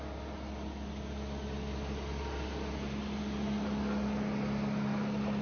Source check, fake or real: real